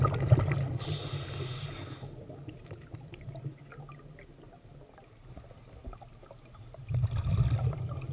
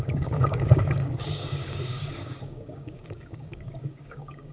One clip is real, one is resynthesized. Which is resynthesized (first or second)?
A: second